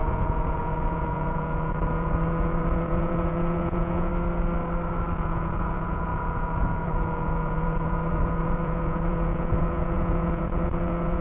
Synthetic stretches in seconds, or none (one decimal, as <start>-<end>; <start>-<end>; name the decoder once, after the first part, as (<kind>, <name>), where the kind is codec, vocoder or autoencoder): 0.0-4.1 (vocoder, Vocos); 5.1-11.2